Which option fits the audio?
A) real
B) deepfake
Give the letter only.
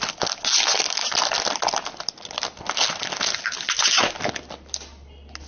A